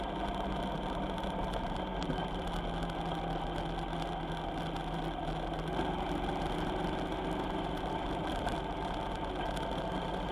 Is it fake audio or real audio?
real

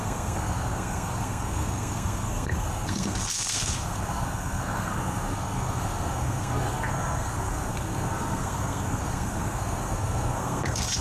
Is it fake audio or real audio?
fake